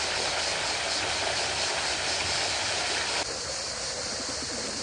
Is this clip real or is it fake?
real